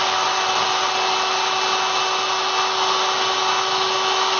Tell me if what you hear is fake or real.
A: real